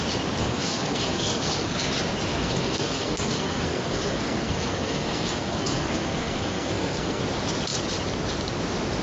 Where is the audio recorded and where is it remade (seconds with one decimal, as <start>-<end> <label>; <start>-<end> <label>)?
0.0-0.4 recorded; 0.4-1.9 remade; 1.9-2.3 recorded; 2.3-7.2 remade; 7.2-9.0 recorded